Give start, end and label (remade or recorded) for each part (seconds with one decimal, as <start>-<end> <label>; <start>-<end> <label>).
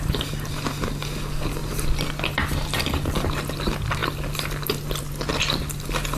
0.0-6.2 recorded